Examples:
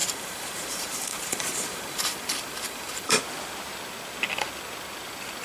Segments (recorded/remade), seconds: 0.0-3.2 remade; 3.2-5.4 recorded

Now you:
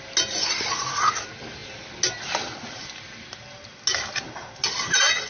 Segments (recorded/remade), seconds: 0.0-5.3 recorded

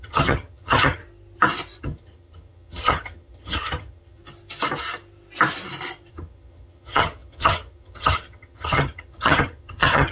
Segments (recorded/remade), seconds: 0.0-1.0 remade; 1.0-1.8 recorded; 1.8-4.2 remade; 4.2-6.1 recorded; 6.1-10.1 remade

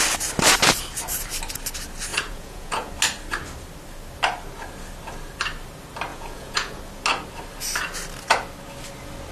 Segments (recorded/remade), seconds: 0.0-2.1 recorded; 2.1-2.9 remade; 2.9-6.1 recorded; 6.1-6.8 remade; 6.8-9.3 recorded

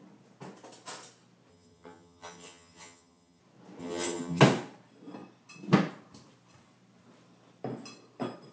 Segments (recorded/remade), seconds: 0.0-1.5 recorded; 1.5-3.4 remade; 3.4-3.8 recorded; 3.8-4.4 remade; 4.4-8.5 recorded

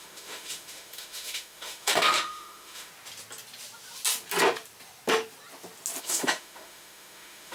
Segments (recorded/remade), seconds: 0.0-2.9 remade; 2.9-6.0 recorded; 6.0-7.5 remade